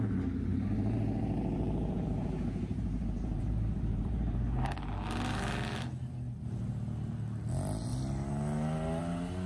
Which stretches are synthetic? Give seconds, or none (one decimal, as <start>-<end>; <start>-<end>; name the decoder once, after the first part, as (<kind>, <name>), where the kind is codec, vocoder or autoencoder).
0.5-4.9 (vocoder, BigVGAN v2)